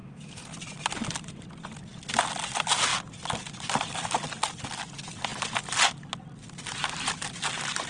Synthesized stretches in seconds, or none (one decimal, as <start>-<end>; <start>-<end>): 0.0-0.5